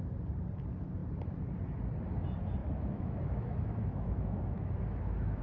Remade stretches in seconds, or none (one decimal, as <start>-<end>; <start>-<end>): 2.6-5.4